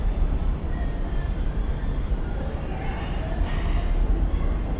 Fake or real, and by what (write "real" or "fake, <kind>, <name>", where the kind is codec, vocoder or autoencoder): fake, vocoder, BigVGAN v2